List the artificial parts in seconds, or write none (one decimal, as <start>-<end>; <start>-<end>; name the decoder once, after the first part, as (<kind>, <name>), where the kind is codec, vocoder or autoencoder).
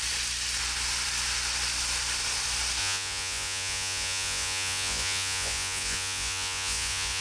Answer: 2.8-7.2 (vocoder, Vocos)